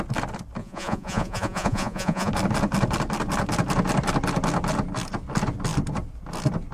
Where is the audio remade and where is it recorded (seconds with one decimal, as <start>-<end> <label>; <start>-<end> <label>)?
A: 0.0-0.6 recorded; 0.6-2.3 remade; 2.3-6.7 recorded